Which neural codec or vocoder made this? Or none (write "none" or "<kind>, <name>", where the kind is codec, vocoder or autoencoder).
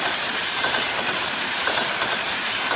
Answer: vocoder, BigVGAN v2